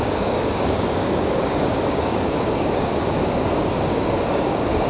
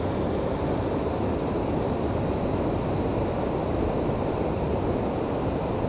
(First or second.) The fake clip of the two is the first